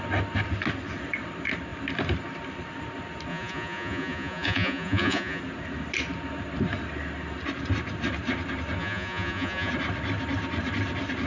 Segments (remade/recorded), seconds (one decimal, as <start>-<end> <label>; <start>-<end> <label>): 0.0-3.3 recorded; 3.3-5.4 remade; 5.4-8.8 recorded; 8.8-9.7 remade; 9.7-11.3 recorded